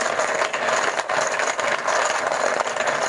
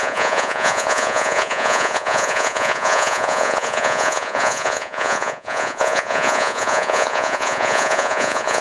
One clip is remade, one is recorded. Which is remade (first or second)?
second